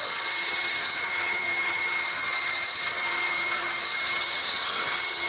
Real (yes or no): no